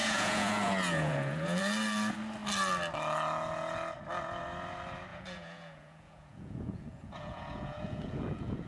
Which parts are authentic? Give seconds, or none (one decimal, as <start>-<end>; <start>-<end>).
1.6-5.1